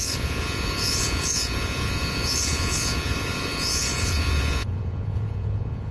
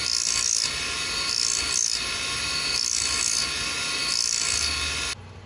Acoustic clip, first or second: second